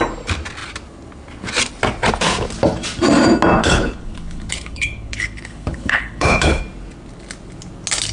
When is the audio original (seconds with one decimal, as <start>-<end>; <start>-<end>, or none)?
0.0-3.6; 6.6-8.1